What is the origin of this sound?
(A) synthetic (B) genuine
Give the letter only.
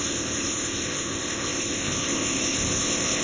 A